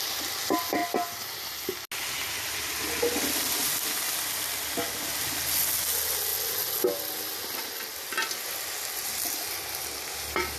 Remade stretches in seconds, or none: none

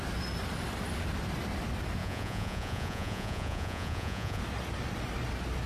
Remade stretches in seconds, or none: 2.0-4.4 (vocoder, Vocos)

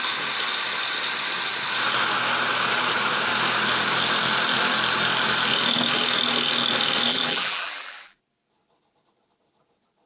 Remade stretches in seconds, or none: 7.1-8.2 (vocoder, BigVGAN v2)